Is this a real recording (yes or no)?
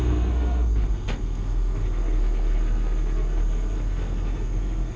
no